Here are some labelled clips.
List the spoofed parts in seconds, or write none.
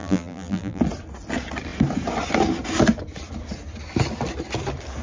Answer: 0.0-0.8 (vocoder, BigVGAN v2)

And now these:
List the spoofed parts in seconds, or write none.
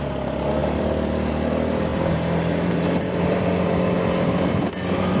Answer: 0.6-1.3 (vocoder, BigVGAN v2); 1.9-3.4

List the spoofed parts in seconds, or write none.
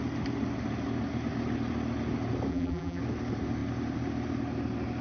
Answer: 2.5-3.0 (vocoder, BigVGAN v2)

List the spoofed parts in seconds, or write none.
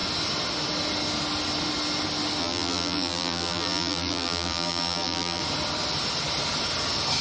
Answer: 2.4-5.4 (vocoder, BigVGAN v2)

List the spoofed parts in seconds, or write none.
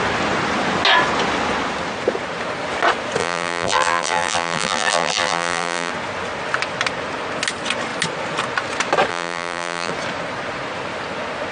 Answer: 3.2-5.9 (vocoder, BigVGAN v2); 9.1-9.9